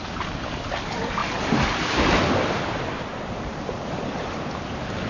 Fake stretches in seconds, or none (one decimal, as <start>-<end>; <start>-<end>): 1.2-2.2; 3.1-4.2